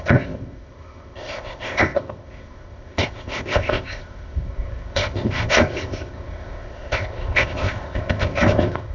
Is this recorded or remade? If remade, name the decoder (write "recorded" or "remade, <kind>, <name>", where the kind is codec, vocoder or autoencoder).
remade, codec, ZipCodec